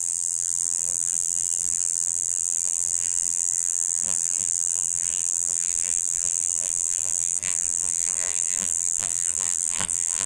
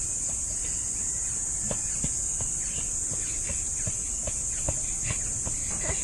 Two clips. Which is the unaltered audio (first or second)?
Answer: second